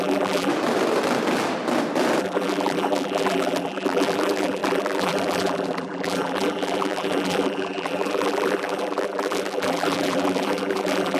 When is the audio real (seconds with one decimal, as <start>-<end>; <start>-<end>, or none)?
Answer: 0.5-2.2